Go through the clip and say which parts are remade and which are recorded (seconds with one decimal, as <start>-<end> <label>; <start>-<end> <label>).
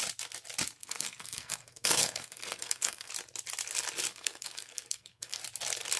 0.0-0.8 recorded; 0.8-3.1 remade; 3.1-4.1 recorded; 4.1-5.4 remade; 5.4-6.0 recorded